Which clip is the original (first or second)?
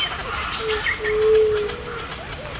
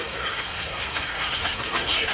first